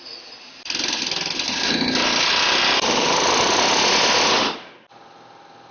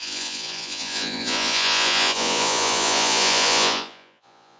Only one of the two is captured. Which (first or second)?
first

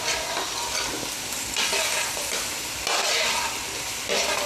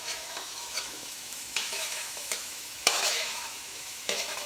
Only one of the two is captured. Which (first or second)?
first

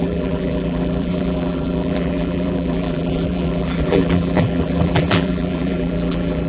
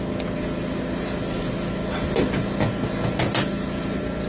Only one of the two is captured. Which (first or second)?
second